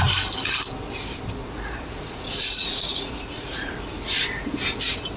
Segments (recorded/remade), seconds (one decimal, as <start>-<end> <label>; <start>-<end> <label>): 0.0-1.4 recorded; 1.4-3.7 remade; 3.7-5.2 recorded

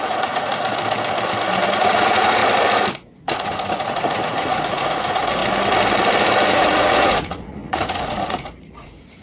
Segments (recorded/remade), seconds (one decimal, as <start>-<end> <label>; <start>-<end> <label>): 0.0-0.5 remade; 0.5-1.8 recorded; 1.8-2.4 remade; 2.4-3.2 recorded; 3.2-5.4 remade; 5.4-6.5 recorded; 6.5-9.2 remade

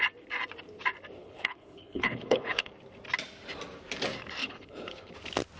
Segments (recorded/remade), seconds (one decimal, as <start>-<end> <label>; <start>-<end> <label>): 0.0-1.2 recorded; 1.2-2.7 remade; 2.7-4.4 recorded; 4.4-5.1 remade; 5.1-5.6 recorded

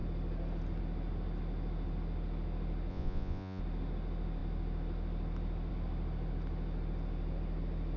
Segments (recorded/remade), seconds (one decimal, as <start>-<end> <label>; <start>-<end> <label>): 0.0-2.9 recorded; 2.9-3.6 remade; 3.6-8.0 recorded

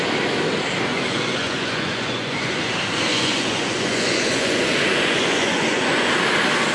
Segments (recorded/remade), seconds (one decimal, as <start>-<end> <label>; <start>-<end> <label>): 0.0-0.9 recorded; 0.9-2.7 remade; 2.7-3.1 recorded; 3.1-6.1 remade; 6.1-6.7 recorded

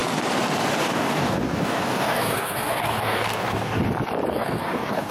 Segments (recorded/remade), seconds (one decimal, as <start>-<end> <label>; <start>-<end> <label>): 0.0-0.8 recorded; 0.8-3.8 remade; 3.8-4.3 recorded; 4.3-5.1 remade

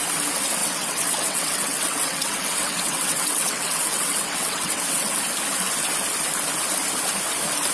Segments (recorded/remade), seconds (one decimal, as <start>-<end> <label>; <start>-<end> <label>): 0.0-0.6 recorded; 0.6-5.2 remade; 5.2-7.7 recorded

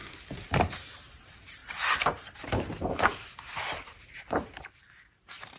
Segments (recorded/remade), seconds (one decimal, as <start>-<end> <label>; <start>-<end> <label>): 0.0-5.6 remade